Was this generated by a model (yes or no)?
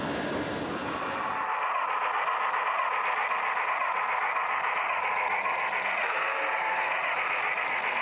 no